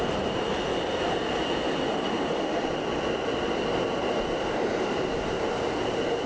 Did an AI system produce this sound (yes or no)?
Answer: no